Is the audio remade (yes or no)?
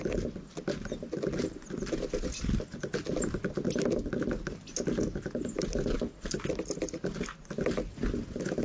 no